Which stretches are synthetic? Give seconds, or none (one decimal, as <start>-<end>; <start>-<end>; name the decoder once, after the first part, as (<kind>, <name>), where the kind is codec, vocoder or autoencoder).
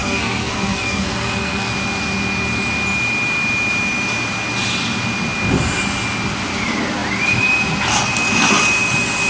0.0-1.7 (codec, SNAC)